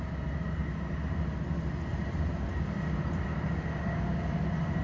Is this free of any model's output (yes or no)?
yes